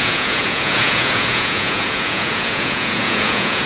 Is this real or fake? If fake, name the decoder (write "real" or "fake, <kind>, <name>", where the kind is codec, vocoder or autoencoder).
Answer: fake, vocoder, Vocos